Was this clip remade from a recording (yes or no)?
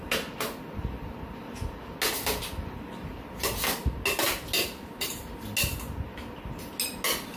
no